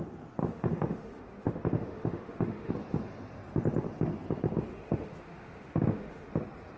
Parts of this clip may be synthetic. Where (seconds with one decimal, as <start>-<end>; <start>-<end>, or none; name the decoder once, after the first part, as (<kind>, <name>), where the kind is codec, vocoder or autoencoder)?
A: 0.4-2.7 (autoencoder, DAC-VAE); 4.7-6.3